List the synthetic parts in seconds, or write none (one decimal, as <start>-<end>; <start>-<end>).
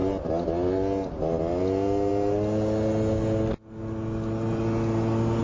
none